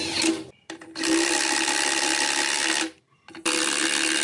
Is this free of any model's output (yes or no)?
yes